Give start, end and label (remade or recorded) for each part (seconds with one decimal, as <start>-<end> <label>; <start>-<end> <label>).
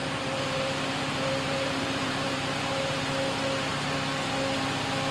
0.0-3.1 remade; 3.1-5.1 recorded